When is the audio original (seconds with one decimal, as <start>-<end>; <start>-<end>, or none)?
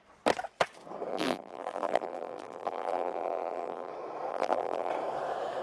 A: 0.0-1.1; 3.9-4.3; 4.9-5.6